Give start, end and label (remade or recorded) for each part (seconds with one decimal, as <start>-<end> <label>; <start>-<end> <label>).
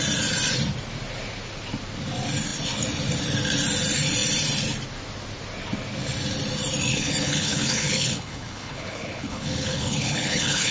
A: 0.0-6.9 recorded; 6.9-10.7 remade